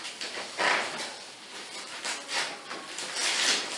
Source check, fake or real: fake